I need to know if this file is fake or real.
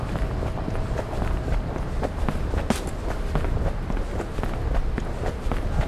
real